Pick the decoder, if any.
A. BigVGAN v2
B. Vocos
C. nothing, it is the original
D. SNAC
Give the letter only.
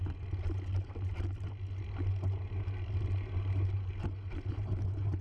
C